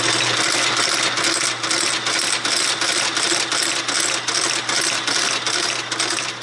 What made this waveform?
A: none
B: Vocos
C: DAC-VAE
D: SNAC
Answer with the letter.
A